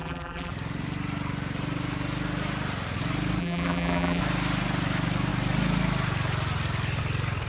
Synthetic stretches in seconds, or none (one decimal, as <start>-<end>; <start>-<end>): 0.0-0.5; 3.4-4.2

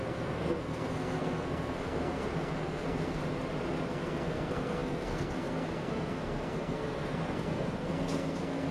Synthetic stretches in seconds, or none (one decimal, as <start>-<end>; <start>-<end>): 0.0-3.2; 3.9-8.7

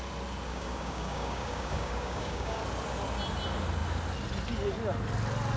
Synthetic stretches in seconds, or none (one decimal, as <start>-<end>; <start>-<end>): 0.5-2.6

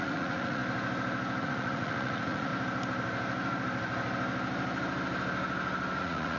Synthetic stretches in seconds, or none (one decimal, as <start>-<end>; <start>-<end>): 0.0-0.6; 1.4-2.5; 6.0-6.4